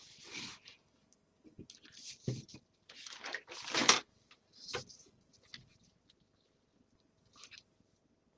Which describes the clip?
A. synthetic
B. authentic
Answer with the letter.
B